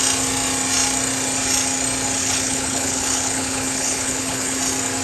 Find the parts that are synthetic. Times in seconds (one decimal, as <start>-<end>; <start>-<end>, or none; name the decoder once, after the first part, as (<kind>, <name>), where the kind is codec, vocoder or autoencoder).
2.2-4.6 (codec, HILCodec)